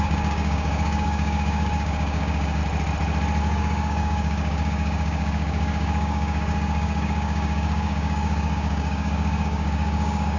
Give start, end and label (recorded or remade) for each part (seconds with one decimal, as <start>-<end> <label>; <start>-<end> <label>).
0.0-2.6 remade; 2.6-3.4 recorded; 3.4-10.4 remade

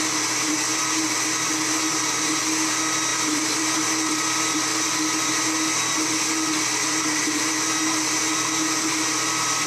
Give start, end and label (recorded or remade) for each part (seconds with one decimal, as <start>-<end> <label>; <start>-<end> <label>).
0.0-9.7 recorded

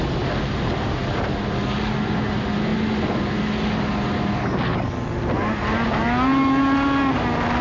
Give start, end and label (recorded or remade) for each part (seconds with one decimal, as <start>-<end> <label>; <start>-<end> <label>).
0.0-7.6 recorded

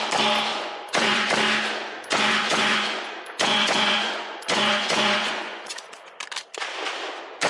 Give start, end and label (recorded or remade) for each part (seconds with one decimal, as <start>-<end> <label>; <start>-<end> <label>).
0.0-0.5 recorded; 0.5-1.3 remade; 1.3-1.8 recorded; 1.8-6.2 remade; 6.2-7.5 recorded

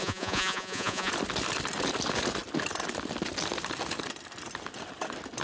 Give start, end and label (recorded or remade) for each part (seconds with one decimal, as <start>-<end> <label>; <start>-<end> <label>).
0.0-1.1 remade; 1.1-5.4 recorded